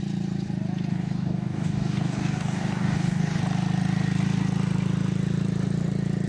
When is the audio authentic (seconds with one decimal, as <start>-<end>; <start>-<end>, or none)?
0.0-0.9; 3.4-6.3